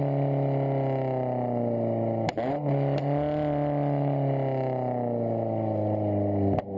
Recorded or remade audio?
recorded